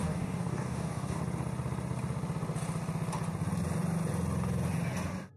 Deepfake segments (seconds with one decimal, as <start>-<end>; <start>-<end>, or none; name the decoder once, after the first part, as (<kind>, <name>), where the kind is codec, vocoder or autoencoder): 0.0-1.2 (codec, DAC)